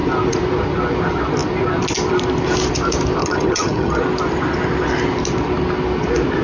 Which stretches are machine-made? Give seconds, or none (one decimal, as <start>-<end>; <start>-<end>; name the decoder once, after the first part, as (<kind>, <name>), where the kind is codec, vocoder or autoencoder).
3.2-4.0 (vocoder, HiFi-GAN)